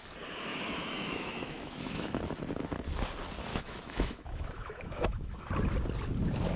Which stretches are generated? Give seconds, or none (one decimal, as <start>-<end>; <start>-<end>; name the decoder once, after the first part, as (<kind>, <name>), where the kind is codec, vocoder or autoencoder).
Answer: 0.5-2.2 (autoencoder, DAC-VAE); 3.5-5.5